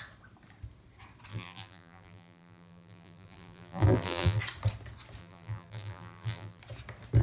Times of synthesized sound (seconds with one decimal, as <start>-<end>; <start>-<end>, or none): 1.3-4.4; 5.2-6.6